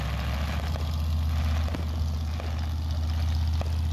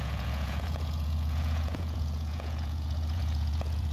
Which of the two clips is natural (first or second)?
first